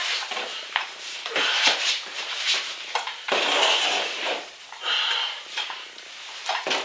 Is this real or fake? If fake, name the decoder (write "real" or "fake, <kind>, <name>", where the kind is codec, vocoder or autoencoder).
fake, vocoder, BigVGAN v2